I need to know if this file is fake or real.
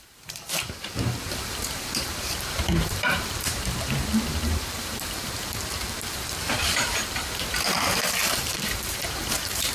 fake